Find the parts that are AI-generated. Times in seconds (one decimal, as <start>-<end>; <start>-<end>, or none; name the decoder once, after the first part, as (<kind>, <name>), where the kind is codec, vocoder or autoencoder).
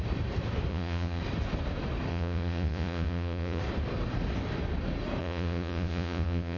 0.7-1.2 (vocoder, Vocos); 2.1-3.6; 5.2-6.6